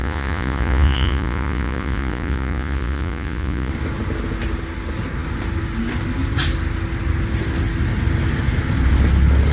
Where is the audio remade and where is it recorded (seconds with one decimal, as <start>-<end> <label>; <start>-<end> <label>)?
0.0-3.7 remade; 3.7-9.5 recorded